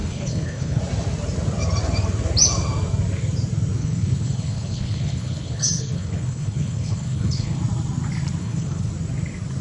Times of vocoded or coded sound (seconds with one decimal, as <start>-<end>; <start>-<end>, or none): 0.0-0.8; 3.8-7.6; 8.4-8.9